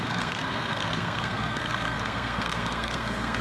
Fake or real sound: fake